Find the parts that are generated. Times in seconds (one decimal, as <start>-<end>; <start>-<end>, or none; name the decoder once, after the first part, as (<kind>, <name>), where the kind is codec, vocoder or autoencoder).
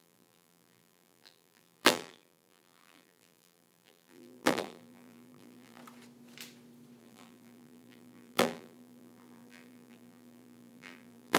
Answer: 0.0-5.8 (vocoder, BigVGAN v2); 7.0-11.4